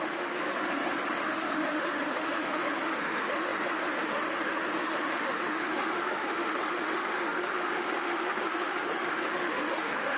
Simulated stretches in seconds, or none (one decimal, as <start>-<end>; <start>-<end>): 0.0-0.5; 1.1-10.2